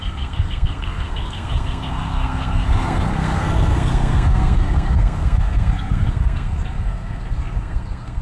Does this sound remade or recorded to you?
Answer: remade